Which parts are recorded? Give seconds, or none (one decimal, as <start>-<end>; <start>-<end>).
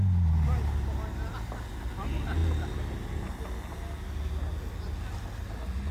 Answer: 0.0-5.9